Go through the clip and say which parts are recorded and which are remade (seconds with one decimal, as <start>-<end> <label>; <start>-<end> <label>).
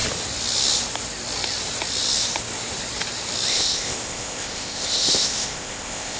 0.0-3.5 recorded; 3.5-6.2 remade